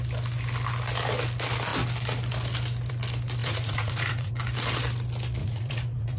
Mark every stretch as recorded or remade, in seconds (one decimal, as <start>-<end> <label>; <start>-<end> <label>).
0.0-3.4 recorded; 3.4-4.3 remade; 4.3-5.4 recorded; 5.4-6.2 remade